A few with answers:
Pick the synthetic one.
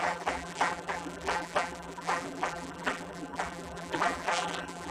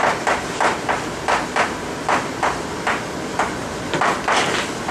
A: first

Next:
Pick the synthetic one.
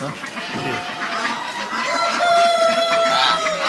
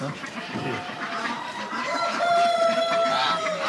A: second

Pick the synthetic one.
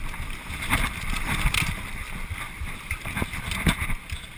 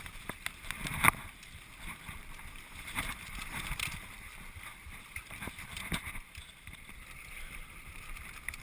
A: second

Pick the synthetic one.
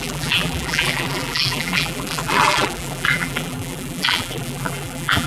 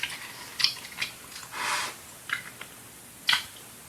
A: first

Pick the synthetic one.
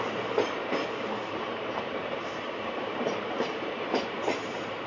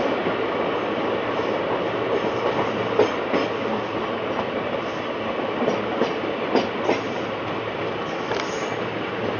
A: first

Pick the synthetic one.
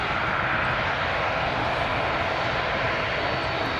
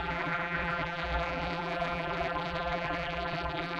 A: second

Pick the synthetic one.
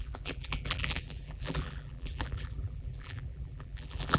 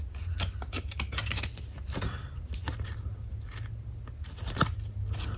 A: first